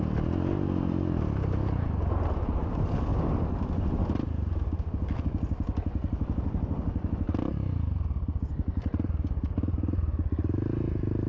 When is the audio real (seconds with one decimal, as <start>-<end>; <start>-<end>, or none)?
0.0-11.3